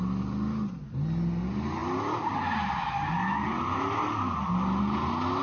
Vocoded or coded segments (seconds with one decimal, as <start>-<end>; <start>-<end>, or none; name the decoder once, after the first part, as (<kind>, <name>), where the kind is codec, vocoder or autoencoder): none